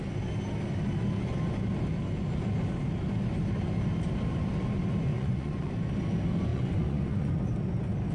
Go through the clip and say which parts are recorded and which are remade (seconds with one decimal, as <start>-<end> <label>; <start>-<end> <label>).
0.0-5.1 recorded; 5.1-5.7 remade; 5.7-6.5 recorded; 6.5-7.4 remade; 7.4-8.1 recorded